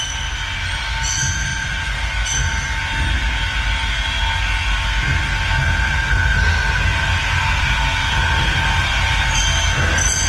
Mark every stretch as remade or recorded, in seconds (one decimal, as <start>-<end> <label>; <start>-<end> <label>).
0.0-10.3 recorded